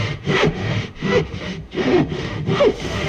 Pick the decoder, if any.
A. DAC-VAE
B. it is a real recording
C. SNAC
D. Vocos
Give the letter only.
A